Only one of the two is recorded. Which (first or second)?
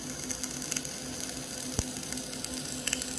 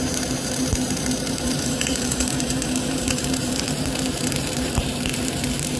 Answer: first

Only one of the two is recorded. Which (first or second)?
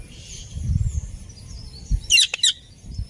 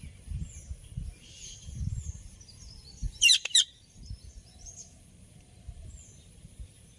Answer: first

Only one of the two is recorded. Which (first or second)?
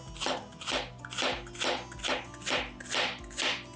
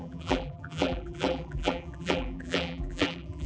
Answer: first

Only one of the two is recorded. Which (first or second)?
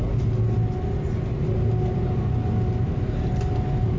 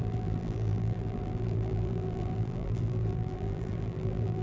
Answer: first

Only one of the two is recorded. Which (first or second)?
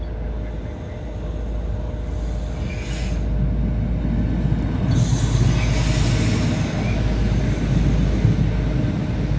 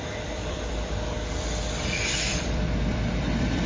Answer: first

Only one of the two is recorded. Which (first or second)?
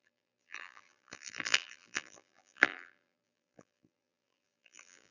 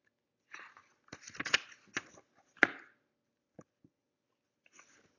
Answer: second